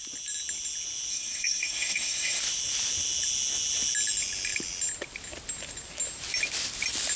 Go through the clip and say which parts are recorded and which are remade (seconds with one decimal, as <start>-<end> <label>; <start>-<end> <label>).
0.0-1.1 recorded; 1.1-2.4 remade; 2.4-7.2 recorded